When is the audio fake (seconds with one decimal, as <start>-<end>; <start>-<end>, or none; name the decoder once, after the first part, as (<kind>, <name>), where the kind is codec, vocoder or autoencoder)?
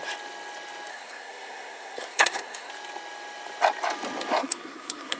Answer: 0.9-2.7 (codec, SNAC); 4.4-5.2